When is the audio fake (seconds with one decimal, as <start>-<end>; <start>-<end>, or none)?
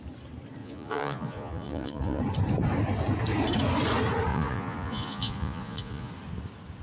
0.6-2.2; 4.3-6.1